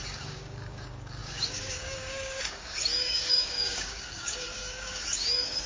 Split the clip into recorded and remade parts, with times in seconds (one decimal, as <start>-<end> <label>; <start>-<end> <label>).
0.0-5.7 remade

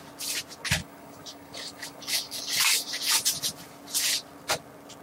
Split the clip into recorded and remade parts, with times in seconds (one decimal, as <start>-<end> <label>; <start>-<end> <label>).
0.0-0.8 recorded; 0.8-2.9 remade; 2.9-5.0 recorded

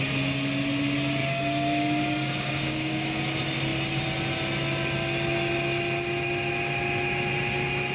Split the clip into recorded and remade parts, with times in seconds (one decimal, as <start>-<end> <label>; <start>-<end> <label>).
0.0-1.2 recorded; 1.2-3.2 remade; 3.2-7.9 recorded

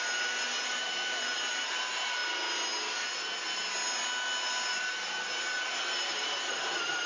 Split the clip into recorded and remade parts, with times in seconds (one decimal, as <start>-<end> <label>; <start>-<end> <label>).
0.0-7.1 recorded

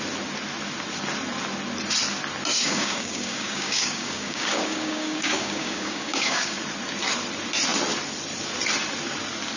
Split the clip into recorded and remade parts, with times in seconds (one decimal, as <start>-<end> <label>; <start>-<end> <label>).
0.0-2.5 recorded; 2.5-6.6 remade; 6.6-9.6 recorded

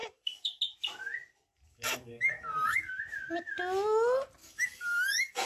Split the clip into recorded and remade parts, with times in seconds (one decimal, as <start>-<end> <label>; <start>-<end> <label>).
0.0-0.6 remade; 0.6-1.7 recorded; 1.7-2.9 remade; 2.9-4.4 recorded; 4.4-5.5 remade